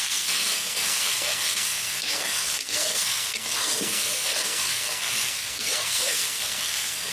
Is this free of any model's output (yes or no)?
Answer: no